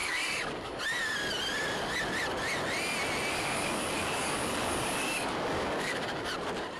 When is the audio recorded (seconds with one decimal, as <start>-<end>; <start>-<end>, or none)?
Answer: 0.8-3.3; 6.3-6.8